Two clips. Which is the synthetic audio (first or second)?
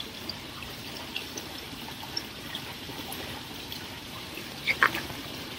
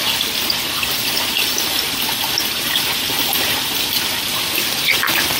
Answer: first